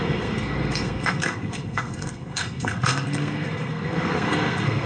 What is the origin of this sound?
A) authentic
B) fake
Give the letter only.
B